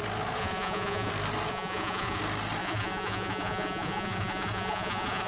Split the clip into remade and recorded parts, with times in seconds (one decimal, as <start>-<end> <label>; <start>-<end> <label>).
0.0-0.4 recorded; 0.4-1.1 remade; 1.1-1.5 recorded; 1.5-2.2 remade; 2.2-2.6 recorded; 2.6-5.3 remade